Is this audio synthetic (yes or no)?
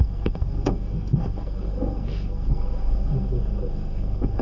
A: yes